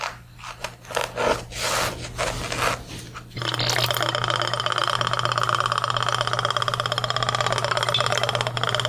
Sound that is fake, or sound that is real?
real